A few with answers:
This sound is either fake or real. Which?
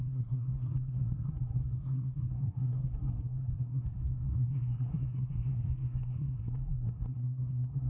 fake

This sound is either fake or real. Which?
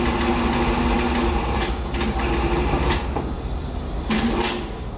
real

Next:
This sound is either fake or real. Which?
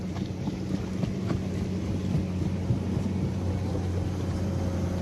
real